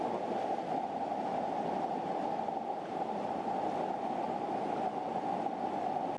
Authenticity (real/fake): real